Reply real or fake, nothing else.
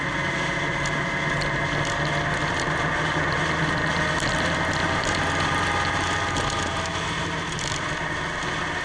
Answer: real